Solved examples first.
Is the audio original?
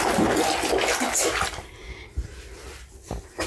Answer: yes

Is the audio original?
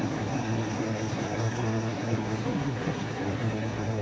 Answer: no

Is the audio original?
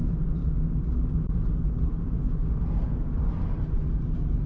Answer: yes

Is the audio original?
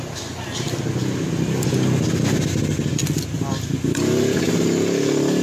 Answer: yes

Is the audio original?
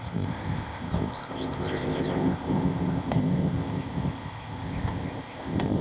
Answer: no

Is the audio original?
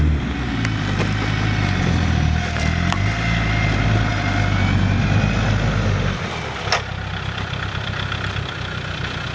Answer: yes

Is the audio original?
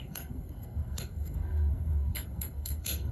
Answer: no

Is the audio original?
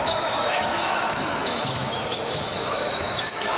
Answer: no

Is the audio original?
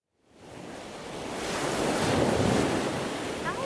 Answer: yes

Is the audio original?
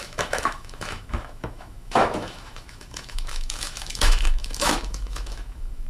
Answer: no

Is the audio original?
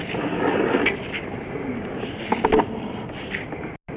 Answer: yes